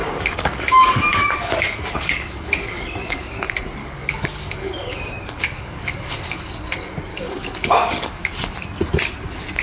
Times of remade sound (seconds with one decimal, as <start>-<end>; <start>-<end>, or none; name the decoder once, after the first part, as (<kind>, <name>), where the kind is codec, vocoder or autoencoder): 0.0-3.4 (codec, DAC); 3.8-6.4; 7.1-8.3